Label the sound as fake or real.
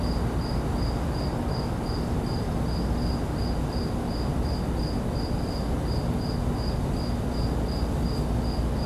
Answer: real